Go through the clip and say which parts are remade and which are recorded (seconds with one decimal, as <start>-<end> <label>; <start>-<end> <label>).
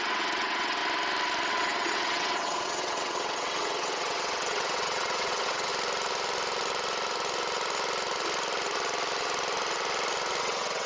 0.0-0.8 remade; 0.8-1.5 recorded; 1.5-5.7 remade; 5.7-10.4 recorded; 10.4-10.9 remade